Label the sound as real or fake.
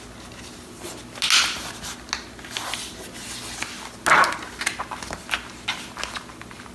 real